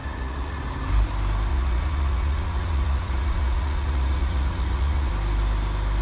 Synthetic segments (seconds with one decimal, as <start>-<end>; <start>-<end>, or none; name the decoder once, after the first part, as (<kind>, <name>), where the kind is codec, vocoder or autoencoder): 0.0-0.6 (vocoder, Vocos); 1.5-5.1

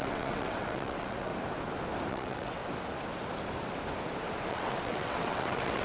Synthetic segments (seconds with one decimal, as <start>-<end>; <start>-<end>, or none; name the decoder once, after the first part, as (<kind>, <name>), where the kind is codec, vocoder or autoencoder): 0.0-1.3 (vocoder, WaveNeXt); 2.1-2.6; 4.5-5.8

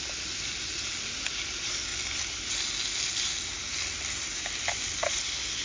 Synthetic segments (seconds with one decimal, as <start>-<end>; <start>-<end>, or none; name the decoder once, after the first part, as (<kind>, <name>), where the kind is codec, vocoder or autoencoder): none

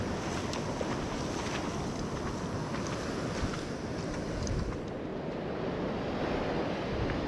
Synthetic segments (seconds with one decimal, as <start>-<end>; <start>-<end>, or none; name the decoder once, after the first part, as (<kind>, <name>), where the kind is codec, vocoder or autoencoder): none

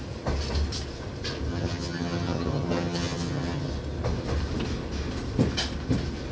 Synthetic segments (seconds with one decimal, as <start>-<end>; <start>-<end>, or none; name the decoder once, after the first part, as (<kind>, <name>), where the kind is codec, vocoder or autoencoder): 1.5-3.7 (vocoder, HiFi-GAN)